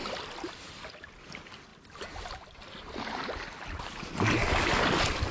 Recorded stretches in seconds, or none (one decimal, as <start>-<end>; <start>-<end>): 0.0-5.3